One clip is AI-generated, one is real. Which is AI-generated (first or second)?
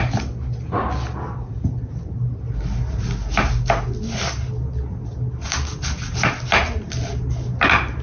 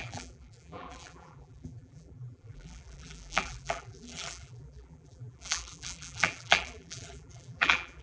second